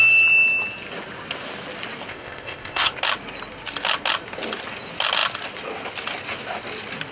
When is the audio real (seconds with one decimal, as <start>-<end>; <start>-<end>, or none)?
0.0-2.1; 2.9-7.1